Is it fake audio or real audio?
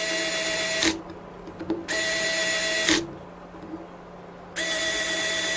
real